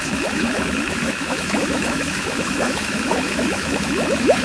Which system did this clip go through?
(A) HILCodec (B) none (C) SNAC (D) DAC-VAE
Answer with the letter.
D